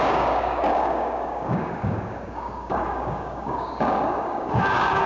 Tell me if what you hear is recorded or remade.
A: remade